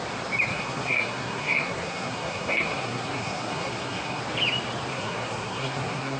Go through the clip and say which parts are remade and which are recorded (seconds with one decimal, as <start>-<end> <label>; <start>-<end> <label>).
0.0-0.5 recorded; 0.5-4.2 remade; 4.2-4.9 recorded; 4.9-6.2 remade